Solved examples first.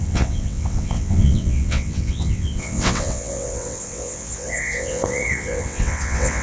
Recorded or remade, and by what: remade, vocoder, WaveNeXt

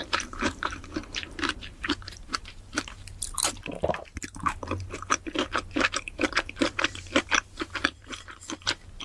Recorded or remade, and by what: remade, vocoder, BigVGAN v2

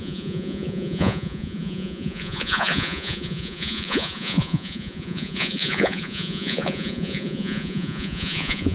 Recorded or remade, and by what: remade, vocoder, Vocos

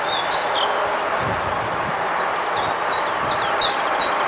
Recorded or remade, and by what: recorded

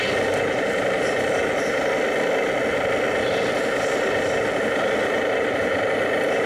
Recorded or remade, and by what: recorded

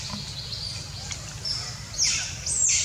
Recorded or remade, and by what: recorded